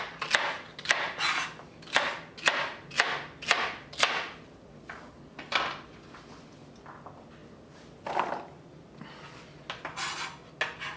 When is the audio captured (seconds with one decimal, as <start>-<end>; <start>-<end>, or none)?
0.0-11.0